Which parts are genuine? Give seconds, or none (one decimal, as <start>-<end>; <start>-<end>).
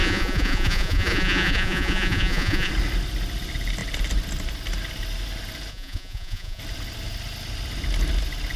2.7-5.7; 6.6-8.6